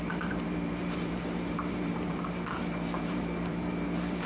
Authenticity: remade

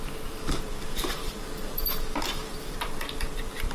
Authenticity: remade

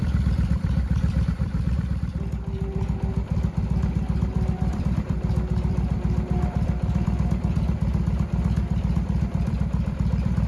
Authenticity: remade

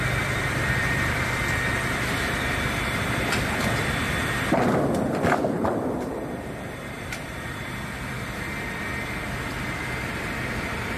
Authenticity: remade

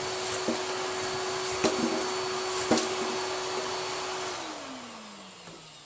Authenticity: recorded